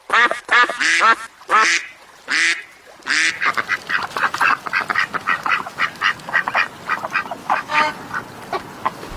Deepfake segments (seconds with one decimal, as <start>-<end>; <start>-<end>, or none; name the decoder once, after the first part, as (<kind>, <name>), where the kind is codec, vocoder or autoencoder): 7.4-7.9 (autoencoder, DAC-VAE)